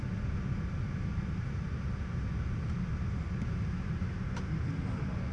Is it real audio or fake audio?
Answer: real